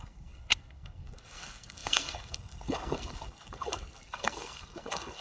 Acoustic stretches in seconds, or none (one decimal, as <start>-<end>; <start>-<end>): none